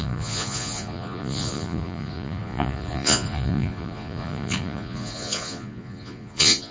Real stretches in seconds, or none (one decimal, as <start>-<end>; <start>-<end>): none